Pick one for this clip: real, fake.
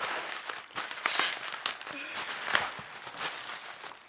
real